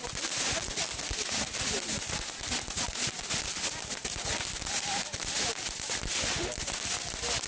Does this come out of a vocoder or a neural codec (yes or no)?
no